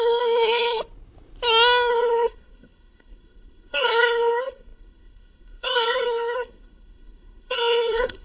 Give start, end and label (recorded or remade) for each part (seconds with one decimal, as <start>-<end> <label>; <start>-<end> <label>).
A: 0.0-0.8 remade; 0.8-1.9 recorded; 1.9-8.2 remade

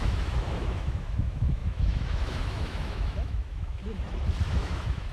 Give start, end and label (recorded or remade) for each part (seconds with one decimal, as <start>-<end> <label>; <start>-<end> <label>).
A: 0.0-3.8 remade; 3.8-4.5 recorded; 4.5-5.1 remade

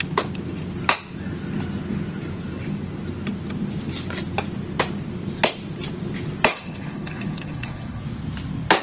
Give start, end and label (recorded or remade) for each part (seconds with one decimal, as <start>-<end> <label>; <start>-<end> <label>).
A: 0.0-6.5 recorded; 6.5-8.0 remade; 8.0-8.8 recorded